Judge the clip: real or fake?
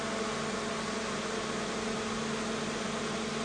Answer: real